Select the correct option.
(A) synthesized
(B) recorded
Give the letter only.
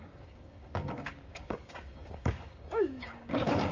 A